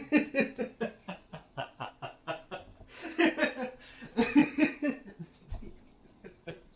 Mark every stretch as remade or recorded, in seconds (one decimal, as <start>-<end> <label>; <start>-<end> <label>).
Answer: 0.0-1.0 recorded; 1.0-1.9 remade; 1.9-4.4 recorded; 4.4-6.8 remade